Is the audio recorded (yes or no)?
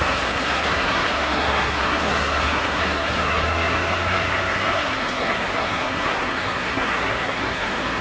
no